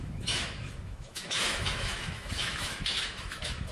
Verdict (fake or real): fake